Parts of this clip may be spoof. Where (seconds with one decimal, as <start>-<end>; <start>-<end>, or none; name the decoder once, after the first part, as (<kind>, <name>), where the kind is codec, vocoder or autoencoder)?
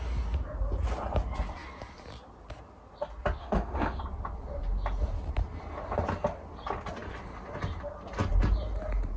3.4-4.0 (autoencoder, DAC-VAE)